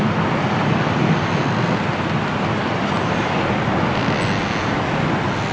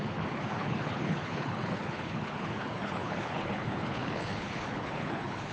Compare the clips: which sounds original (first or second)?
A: first